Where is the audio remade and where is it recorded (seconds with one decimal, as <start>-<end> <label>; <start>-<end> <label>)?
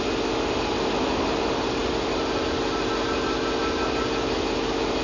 0.0-5.0 recorded